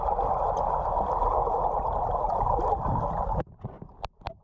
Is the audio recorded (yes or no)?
yes